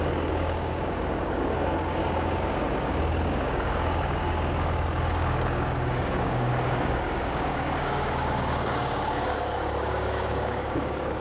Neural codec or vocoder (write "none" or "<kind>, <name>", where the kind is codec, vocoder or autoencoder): codec, DAC